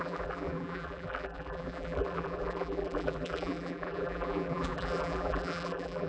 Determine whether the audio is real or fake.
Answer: fake